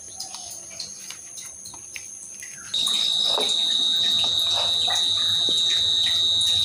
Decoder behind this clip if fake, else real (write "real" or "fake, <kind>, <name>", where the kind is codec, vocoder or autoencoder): real